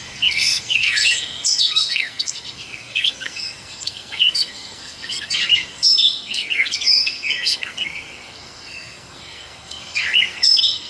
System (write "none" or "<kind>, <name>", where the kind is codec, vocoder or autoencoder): codec, SNAC